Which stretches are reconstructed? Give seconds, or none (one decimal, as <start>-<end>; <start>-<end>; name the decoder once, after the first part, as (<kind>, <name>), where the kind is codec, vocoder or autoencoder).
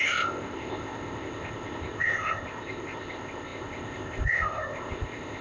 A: 0.0-5.4 (codec, ZipCodec)